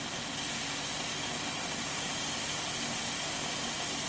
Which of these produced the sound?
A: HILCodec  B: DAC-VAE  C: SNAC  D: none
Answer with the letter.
D